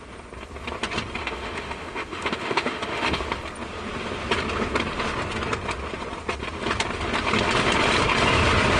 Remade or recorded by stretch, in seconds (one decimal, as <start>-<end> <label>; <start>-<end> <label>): 0.0-1.2 recorded; 1.2-3.2 remade; 3.2-8.8 recorded